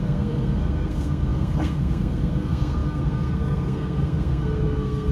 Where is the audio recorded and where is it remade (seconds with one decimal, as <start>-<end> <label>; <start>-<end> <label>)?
0.0-5.1 remade